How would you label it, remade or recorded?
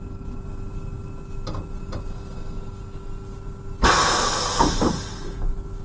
recorded